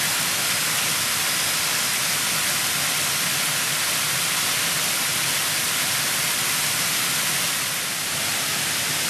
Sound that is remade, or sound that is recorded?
recorded